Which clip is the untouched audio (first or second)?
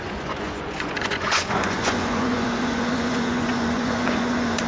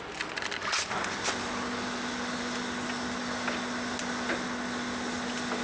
second